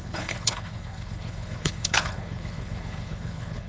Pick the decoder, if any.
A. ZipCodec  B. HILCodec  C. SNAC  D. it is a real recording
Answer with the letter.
B